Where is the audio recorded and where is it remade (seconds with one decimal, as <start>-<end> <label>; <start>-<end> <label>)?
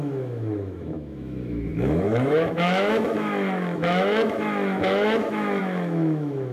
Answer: 0.0-6.5 remade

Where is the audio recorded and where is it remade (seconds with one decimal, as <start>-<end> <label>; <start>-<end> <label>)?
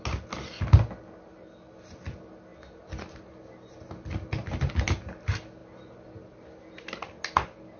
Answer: 0.0-7.8 recorded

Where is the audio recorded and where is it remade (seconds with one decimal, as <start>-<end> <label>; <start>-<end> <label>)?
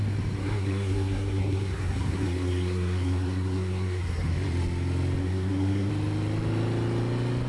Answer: 0.0-0.4 recorded; 0.4-4.3 remade; 4.3-5.2 recorded; 5.2-5.9 remade; 5.9-7.5 recorded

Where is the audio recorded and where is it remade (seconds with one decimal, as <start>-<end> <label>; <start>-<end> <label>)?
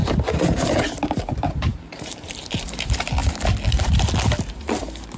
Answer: 0.0-3.2 remade; 3.2-4.8 recorded; 4.8-5.2 remade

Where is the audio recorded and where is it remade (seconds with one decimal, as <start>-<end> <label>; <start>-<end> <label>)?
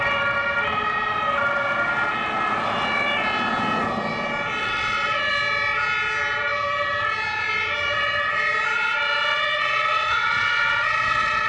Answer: 0.0-4.6 recorded; 4.6-5.3 remade; 5.3-9.3 recorded; 9.3-11.5 remade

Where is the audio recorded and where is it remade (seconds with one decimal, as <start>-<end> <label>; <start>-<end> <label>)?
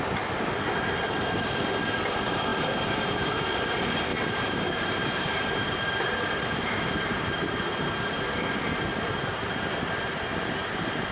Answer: 0.0-2.5 recorded; 2.5-3.4 remade; 3.4-4.1 recorded; 4.1-8.3 remade; 8.3-8.9 recorded; 8.9-10.1 remade; 10.1-11.1 recorded